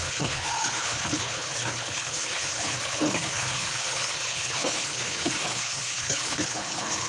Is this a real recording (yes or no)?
no